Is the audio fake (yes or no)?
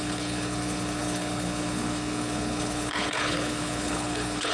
yes